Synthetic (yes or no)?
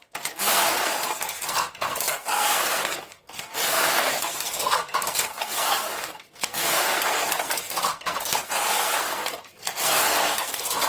yes